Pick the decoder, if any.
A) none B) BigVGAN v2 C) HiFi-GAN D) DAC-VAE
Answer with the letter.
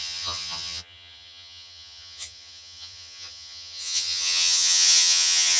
C